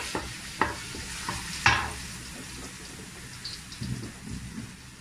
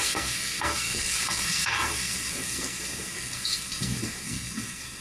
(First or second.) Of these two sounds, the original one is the first